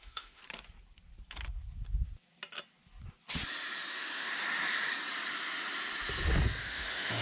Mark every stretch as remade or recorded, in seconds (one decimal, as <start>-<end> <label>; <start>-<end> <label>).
0.0-0.4 remade; 0.4-3.9 recorded; 3.9-4.3 remade; 4.3-6.6 recorded; 6.6-7.2 remade